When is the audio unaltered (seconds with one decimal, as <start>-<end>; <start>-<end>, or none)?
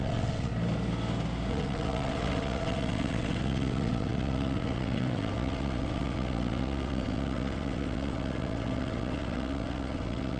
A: 0.5-1.5